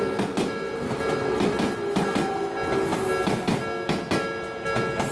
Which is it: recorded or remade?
recorded